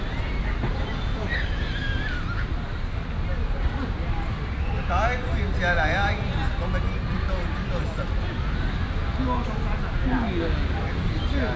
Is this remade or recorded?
recorded